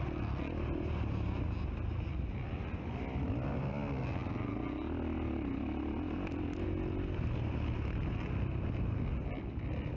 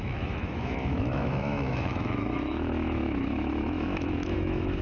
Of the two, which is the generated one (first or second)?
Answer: second